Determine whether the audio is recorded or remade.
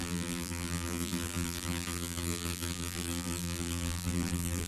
remade